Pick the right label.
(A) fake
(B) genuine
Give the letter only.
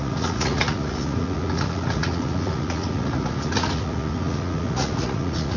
A